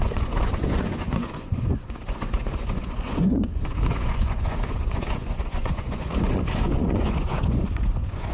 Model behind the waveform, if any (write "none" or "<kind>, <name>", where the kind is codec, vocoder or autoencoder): vocoder, Vocos